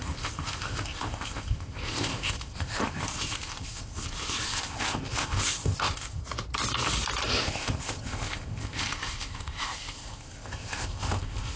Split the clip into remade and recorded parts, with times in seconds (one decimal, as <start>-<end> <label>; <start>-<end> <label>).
0.0-6.2 remade; 6.2-7.4 recorded; 7.4-11.6 remade